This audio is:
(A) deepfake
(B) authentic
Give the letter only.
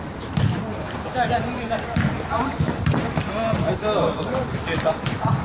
B